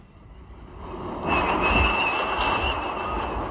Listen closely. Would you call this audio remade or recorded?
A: recorded